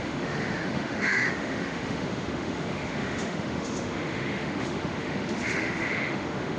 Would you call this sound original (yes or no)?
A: no